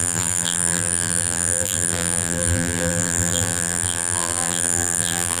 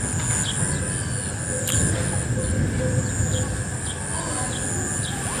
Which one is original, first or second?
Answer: second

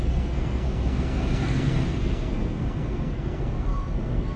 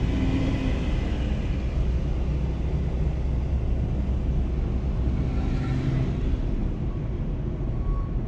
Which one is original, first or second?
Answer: second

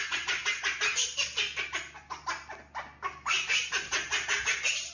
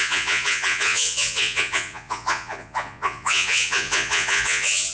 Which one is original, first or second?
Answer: first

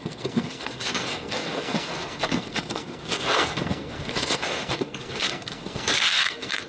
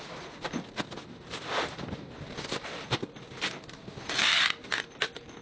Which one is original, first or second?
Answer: second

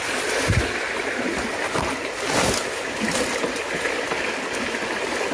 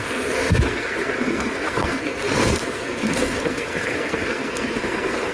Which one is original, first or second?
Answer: first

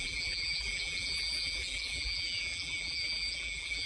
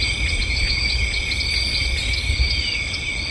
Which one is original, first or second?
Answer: second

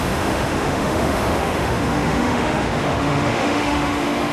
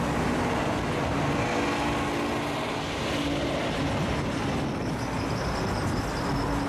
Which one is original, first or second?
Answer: second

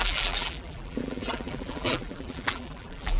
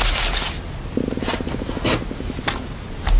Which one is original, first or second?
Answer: second